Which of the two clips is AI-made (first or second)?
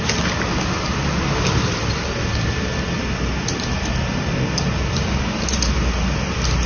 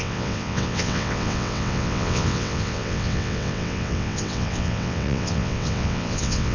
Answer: second